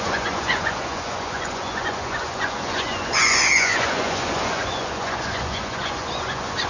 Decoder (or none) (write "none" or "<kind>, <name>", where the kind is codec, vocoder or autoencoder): vocoder, Vocos